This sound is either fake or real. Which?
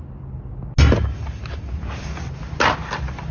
real